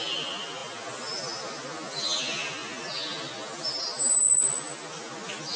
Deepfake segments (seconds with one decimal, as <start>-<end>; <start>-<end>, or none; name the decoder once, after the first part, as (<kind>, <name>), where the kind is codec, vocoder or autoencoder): none